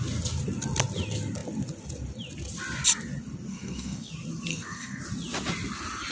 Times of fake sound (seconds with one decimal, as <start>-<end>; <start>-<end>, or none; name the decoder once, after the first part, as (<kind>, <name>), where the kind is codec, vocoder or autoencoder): 3.5-4.1 (codec, SNAC); 4.5-5.0